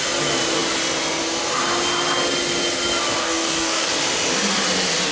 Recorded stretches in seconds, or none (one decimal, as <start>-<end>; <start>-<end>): 0.0-3.2; 3.9-5.1